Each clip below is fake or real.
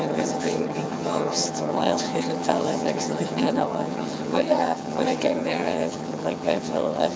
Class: fake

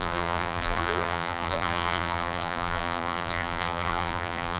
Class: fake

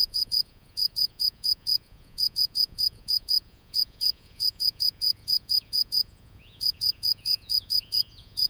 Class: fake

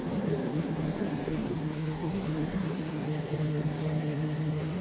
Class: fake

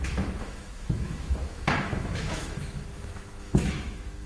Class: fake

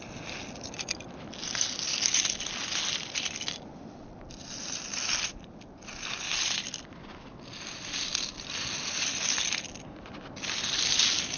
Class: real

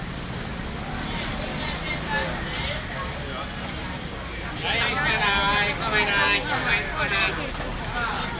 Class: real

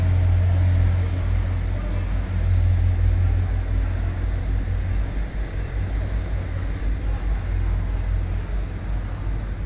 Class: real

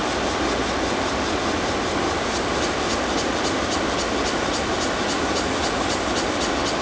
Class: real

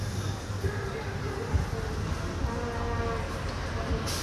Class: real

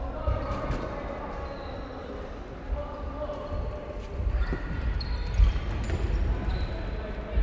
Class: real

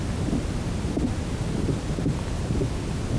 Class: real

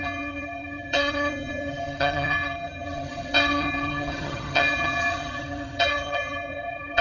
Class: fake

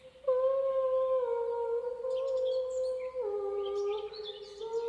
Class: real